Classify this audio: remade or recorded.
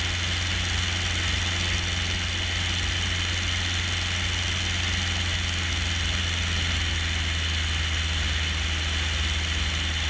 recorded